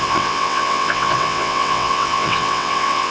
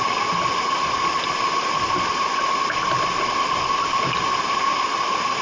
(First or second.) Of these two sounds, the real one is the second